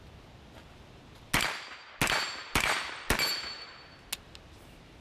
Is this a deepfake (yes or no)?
no